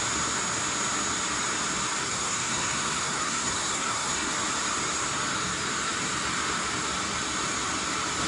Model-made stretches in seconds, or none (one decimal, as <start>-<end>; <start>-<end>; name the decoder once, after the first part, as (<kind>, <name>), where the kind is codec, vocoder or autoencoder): 2.0-4.3 (codec, SNAC)